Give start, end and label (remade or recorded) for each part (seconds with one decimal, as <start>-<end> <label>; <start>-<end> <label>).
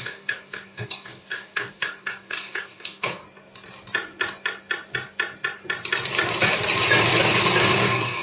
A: 0.0-3.2 remade; 3.2-7.6 recorded; 7.6-8.2 remade